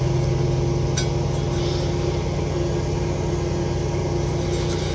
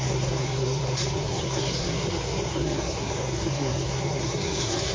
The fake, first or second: second